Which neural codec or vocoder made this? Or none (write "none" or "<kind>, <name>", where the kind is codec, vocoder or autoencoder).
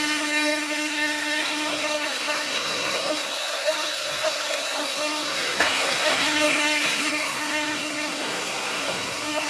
codec, SNAC